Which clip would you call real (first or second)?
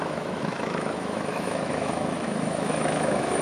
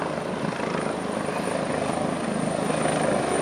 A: second